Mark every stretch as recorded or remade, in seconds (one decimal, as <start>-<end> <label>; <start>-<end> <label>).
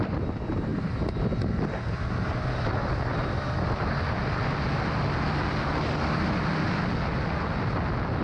0.0-8.2 recorded